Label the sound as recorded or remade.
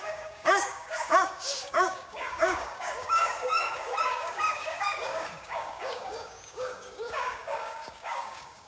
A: remade